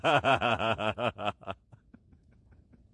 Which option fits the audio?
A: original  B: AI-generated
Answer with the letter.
B